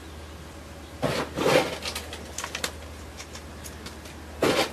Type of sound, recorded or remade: recorded